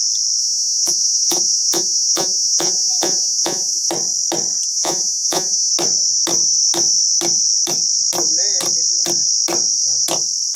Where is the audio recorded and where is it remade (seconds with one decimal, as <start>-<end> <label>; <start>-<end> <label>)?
0.0-0.4 recorded; 0.4-3.9 remade; 3.9-4.7 recorded; 4.7-5.7 remade; 5.7-10.6 recorded